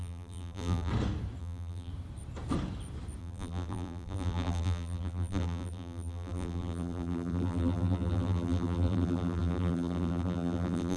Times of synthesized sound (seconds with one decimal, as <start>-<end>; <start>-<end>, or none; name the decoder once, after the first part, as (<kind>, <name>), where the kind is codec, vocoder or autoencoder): 0.0-0.9 (vocoder, BigVGAN v2); 1.4-1.9; 3.2-11.0